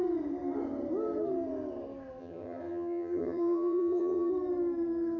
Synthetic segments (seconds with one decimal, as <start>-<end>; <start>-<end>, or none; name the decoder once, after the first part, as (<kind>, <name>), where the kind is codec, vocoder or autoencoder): 2.2-4.3 (vocoder, HiFi-GAN)